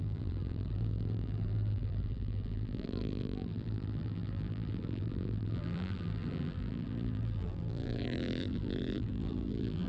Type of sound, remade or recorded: remade